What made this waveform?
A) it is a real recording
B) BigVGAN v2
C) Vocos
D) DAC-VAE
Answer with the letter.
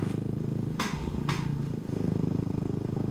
D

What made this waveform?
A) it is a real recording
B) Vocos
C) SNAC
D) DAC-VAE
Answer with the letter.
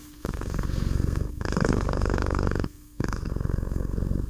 C